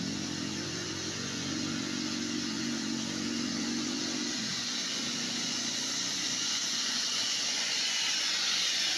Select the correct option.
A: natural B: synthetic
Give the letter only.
B